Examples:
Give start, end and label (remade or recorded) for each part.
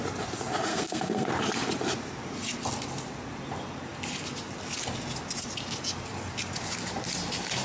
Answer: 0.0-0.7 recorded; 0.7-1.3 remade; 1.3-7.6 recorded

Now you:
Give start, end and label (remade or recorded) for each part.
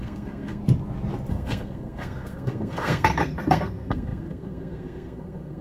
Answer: 0.0-0.6 remade; 0.6-1.3 recorded; 1.3-5.6 remade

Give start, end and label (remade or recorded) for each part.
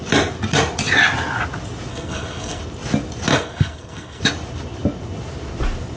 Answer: 0.0-1.9 recorded; 1.9-2.6 remade; 2.6-3.3 recorded; 3.3-4.2 remade; 4.2-6.0 recorded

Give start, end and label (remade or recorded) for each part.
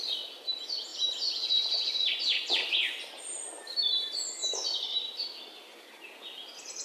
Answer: 0.0-6.8 recorded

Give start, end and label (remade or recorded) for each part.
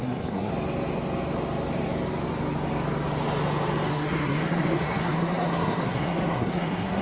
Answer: 0.0-0.5 remade; 0.5-3.9 recorded; 3.9-7.0 remade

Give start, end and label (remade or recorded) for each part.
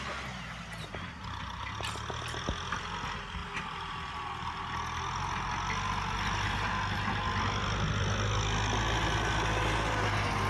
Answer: 0.0-10.5 recorded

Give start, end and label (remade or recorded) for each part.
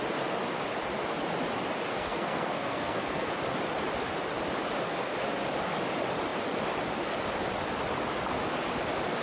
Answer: 0.0-1.9 recorded; 1.9-3.3 remade; 3.3-9.2 recorded